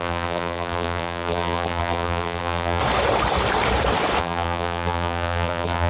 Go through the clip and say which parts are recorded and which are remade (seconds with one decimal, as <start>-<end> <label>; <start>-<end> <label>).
0.0-2.8 remade; 2.8-4.2 recorded; 4.2-5.9 remade